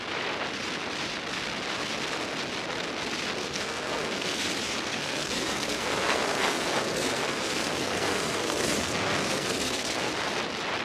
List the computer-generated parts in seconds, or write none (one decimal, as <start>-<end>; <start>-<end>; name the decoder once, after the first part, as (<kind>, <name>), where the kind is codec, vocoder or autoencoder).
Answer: 3.4-4.5 (codec, SNAC); 4.9-10.1